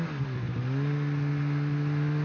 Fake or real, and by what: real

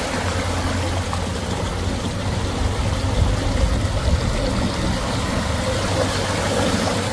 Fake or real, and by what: real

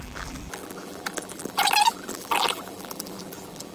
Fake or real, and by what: fake, vocoder, BigVGAN v2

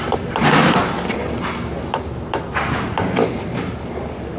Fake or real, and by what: real